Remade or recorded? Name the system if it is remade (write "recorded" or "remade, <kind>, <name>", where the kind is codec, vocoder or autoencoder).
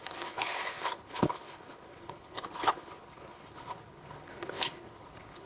remade, codec, HILCodec